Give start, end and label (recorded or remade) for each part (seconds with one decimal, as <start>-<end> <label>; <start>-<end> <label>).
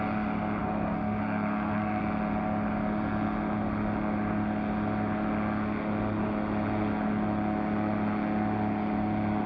0.0-0.6 recorded; 0.6-2.0 remade; 2.0-9.5 recorded